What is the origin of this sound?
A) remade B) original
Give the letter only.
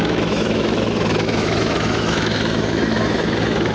A